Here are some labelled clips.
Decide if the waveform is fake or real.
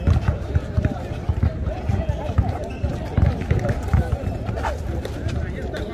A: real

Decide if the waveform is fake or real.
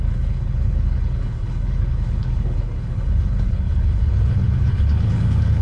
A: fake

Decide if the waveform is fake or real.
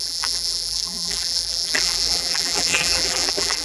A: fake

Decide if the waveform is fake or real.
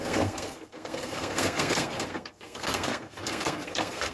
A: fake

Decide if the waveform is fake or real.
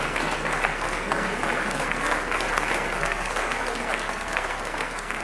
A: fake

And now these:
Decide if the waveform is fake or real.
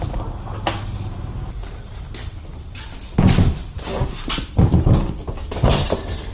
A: real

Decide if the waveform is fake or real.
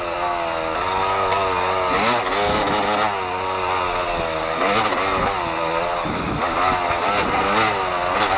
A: real